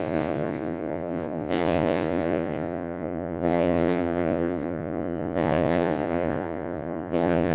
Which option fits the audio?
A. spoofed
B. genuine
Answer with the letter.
A